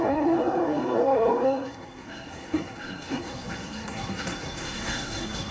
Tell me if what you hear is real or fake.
fake